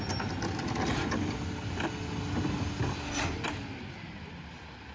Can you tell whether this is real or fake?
real